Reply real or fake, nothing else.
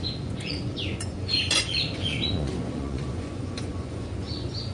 fake